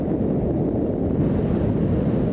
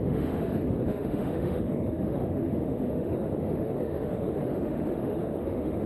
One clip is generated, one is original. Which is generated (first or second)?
second